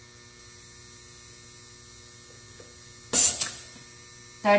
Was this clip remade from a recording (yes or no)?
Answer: no